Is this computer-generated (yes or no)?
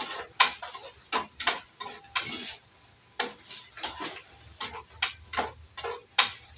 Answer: no